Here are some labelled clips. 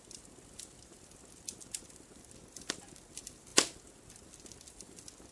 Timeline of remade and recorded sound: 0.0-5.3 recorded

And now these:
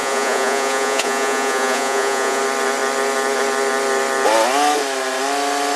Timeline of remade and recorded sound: 0.0-2.4 remade; 2.4-5.8 recorded

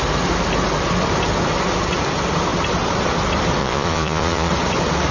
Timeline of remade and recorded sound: 0.0-3.6 recorded; 3.6-4.5 remade; 4.5-5.1 recorded

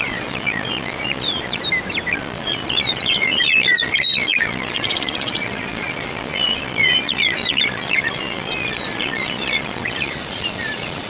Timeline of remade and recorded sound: 0.0-1.6 remade; 1.6-2.1 recorded; 2.1-11.1 remade

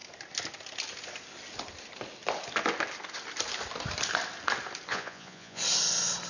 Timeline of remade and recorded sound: 0.0-4.9 recorded; 4.9-5.6 remade; 5.6-6.3 recorded

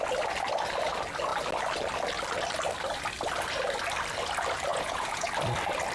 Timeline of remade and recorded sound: 0.0-4.7 recorded; 4.7-5.3 remade; 5.3-5.9 recorded

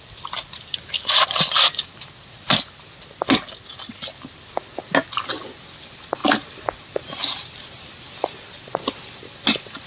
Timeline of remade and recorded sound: 0.0-9.9 recorded

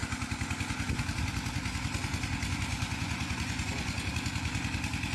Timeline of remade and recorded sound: 0.0-2.7 recorded; 2.7-4.1 remade; 4.1-5.1 recorded